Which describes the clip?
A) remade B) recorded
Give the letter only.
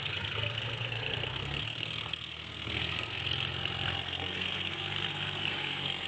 A